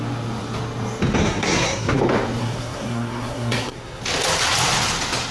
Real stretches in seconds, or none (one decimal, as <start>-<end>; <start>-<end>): 0.0-1.2; 2.0-2.4; 4.0-5.3